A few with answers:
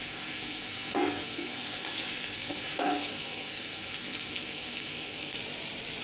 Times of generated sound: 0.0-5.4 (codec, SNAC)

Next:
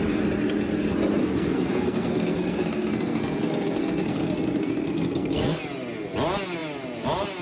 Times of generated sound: 1.2-5.6 (codec, SNAC)